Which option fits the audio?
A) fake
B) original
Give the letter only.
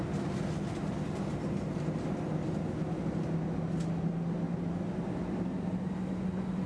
B